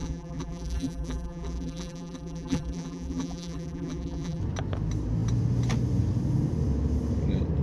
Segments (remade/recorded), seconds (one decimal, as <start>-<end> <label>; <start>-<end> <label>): 0.0-4.4 remade; 4.4-7.6 recorded